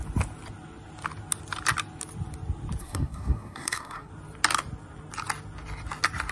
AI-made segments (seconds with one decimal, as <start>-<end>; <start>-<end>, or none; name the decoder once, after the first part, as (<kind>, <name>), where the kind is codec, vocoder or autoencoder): 2.8-4.1 (codec, SNAC)